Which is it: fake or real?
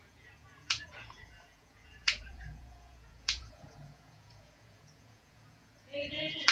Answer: fake